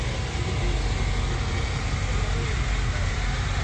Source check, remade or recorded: recorded